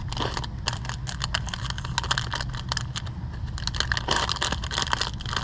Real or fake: real